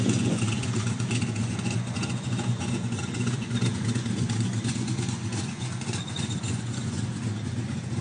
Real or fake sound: fake